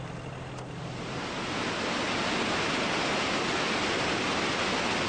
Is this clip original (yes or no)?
yes